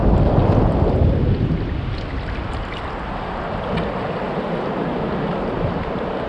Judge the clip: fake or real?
real